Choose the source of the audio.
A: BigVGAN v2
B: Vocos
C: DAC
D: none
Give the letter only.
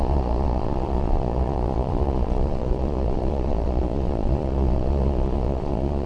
B